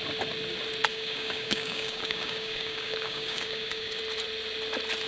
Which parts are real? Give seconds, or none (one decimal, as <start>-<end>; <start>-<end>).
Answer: 0.0-0.9; 4.0-5.1